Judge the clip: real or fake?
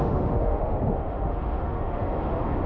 fake